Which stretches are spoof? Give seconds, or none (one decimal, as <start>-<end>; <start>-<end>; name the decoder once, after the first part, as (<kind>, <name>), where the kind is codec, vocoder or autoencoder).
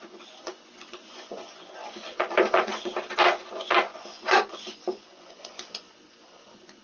0.0-2.9 (vocoder, Vocos); 3.5-6.8